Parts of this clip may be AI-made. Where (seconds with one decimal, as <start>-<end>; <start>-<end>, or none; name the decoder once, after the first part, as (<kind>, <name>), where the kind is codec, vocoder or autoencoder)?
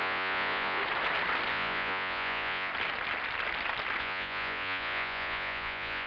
0.0-0.8 (vocoder, Vocos); 1.5-2.7; 4.0-6.1